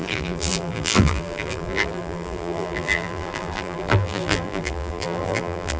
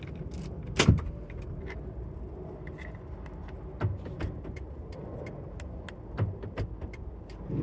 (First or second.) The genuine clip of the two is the second